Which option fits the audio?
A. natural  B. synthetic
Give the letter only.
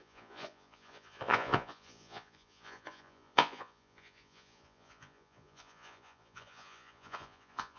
B